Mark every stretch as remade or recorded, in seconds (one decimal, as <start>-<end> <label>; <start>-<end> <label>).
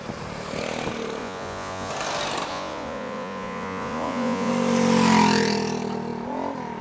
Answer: 0.0-1.2 recorded; 1.2-1.9 remade; 1.9-2.5 recorded; 2.5-4.5 remade; 4.5-6.8 recorded